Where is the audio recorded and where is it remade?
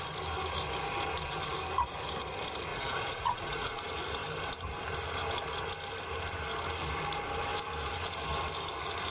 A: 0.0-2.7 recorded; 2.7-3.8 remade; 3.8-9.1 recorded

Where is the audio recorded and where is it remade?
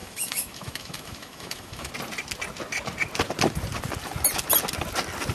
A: 0.0-1.9 remade; 1.9-5.3 recorded